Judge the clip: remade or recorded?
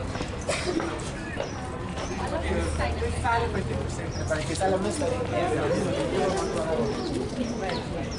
recorded